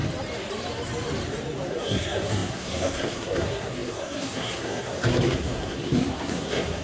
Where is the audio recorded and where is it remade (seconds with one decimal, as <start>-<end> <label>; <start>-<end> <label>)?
0.0-1.7 recorded; 1.7-6.8 remade